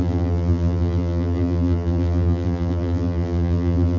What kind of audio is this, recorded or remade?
remade